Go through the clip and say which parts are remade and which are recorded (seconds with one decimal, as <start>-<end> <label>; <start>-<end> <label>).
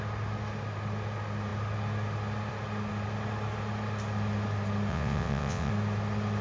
0.0-4.9 recorded; 4.9-5.7 remade; 5.7-6.4 recorded